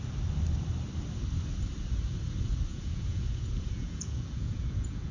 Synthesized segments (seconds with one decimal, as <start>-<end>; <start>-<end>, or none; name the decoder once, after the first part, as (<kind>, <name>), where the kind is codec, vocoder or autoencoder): 2.7-5.1 (vocoder, Vocos)